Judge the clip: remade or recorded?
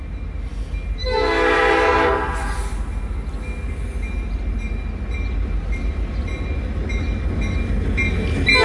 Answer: recorded